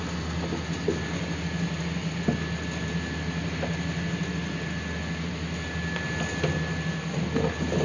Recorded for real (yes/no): yes